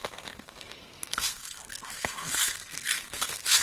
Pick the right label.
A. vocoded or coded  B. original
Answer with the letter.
A